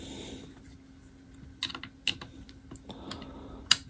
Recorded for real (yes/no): yes